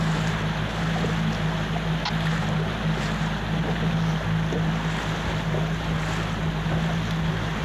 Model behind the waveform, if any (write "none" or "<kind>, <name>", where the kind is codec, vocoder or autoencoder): none